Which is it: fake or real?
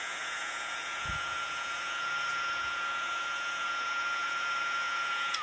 fake